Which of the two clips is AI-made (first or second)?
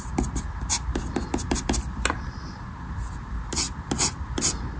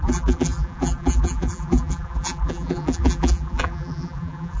second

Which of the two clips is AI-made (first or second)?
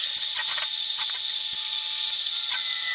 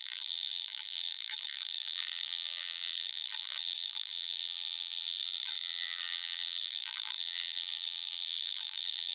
second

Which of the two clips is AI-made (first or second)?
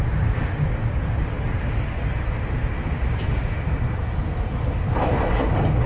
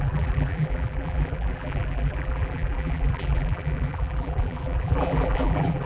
second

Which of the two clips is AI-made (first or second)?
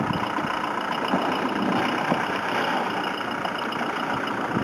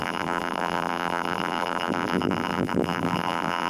second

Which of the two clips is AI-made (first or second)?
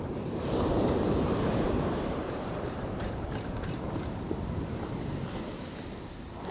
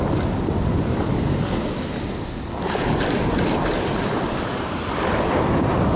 first